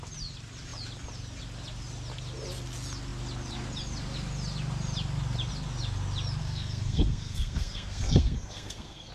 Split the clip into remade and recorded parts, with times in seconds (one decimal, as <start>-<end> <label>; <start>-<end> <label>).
0.0-6.4 recorded; 6.4-9.1 remade